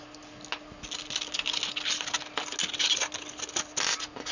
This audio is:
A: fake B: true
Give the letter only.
B